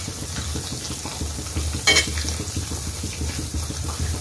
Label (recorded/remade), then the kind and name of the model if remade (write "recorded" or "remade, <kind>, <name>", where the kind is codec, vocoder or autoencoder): recorded